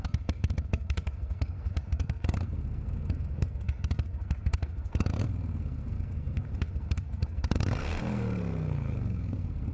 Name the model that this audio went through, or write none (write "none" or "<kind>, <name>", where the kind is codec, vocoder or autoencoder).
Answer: codec, SNAC